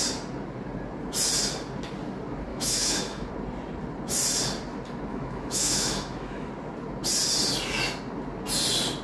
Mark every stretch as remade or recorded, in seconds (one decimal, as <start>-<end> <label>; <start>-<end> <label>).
0.0-2.5 recorded; 2.5-3.3 remade; 3.3-5.1 recorded; 5.1-6.5 remade; 6.5-9.0 recorded